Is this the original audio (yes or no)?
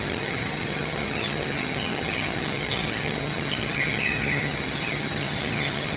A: no